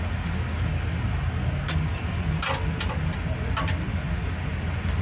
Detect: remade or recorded recorded